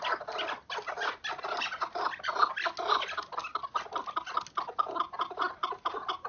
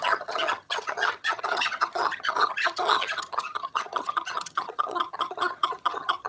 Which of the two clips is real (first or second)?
first